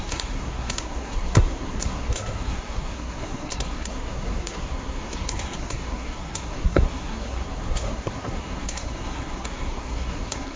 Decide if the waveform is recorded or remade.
remade